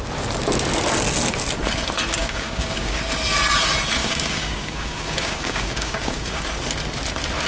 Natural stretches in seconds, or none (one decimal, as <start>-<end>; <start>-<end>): 0.0-2.2; 3.0-4.0; 6.4-7.5